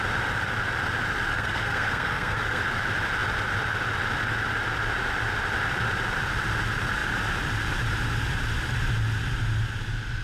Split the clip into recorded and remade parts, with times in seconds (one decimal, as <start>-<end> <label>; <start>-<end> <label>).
0.0-1.3 recorded; 1.3-2.6 remade; 2.6-10.2 recorded